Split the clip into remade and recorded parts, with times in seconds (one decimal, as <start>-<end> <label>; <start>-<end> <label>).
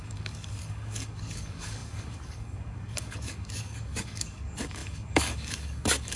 0.0-6.2 remade